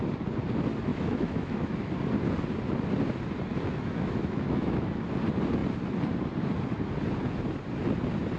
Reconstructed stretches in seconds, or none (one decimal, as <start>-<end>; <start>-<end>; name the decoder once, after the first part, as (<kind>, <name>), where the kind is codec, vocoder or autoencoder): 0.9-1.9 (autoencoder, DAC-VAE); 3.5-5.0